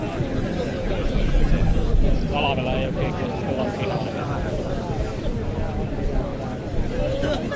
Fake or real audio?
real